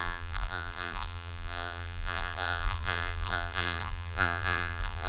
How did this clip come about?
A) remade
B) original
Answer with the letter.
A